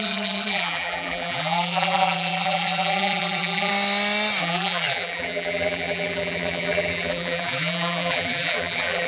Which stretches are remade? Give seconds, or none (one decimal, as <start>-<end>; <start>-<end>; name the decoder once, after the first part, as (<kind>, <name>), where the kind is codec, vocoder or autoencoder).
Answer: 0.0-3.7 (vocoder, BigVGAN v2); 4.4-9.1